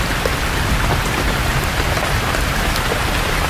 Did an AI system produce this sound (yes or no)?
no